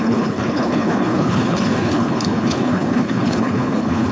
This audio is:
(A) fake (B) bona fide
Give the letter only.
A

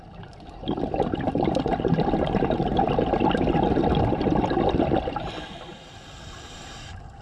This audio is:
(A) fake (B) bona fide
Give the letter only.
B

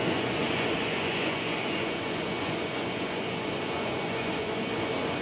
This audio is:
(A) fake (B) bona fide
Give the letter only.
A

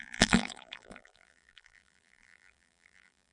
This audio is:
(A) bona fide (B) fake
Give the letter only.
B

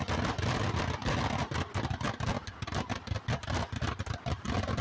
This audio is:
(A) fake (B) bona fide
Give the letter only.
B